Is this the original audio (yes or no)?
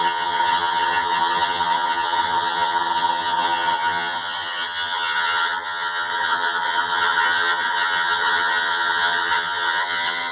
no